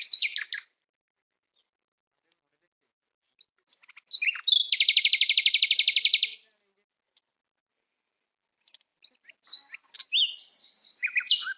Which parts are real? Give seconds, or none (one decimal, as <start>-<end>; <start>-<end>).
0.0-10.6